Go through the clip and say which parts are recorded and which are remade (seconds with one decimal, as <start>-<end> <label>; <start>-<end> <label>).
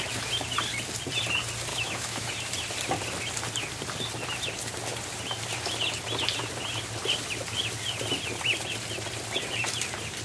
0.0-1.7 recorded; 1.7-2.3 remade; 2.3-10.2 recorded